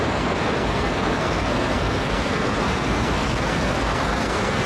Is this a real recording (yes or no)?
no